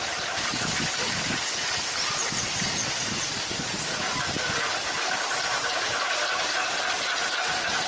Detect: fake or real real